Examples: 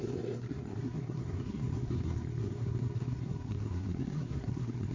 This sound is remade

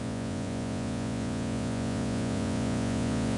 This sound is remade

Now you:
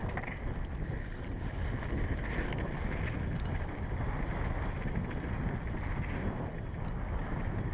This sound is recorded